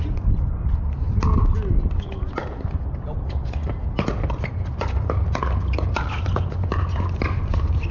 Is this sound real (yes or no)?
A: yes